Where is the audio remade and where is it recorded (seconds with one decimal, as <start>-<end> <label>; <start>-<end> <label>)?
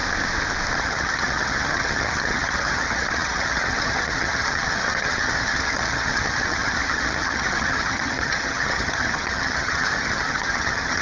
0.0-0.8 recorded; 0.8-11.0 remade